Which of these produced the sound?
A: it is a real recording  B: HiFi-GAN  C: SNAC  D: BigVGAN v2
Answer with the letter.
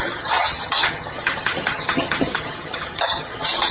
B